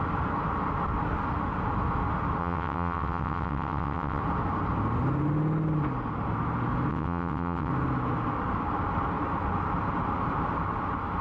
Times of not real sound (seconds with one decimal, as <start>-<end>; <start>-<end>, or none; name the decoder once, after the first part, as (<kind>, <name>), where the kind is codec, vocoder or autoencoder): 2.4-4.2 (vocoder, WaveNeXt); 6.9-7.7